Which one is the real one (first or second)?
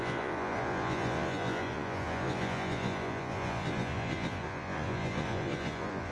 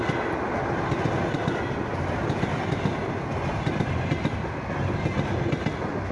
second